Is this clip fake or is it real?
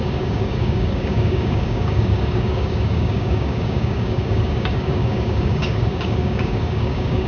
fake